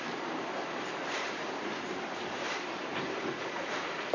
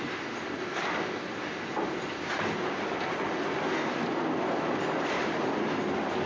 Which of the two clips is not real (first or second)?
first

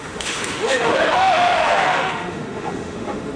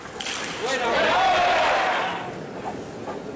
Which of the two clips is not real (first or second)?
first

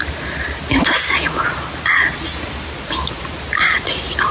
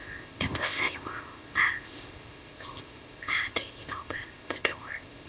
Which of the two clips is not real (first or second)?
second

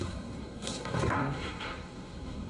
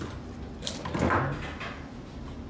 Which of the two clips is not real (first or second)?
first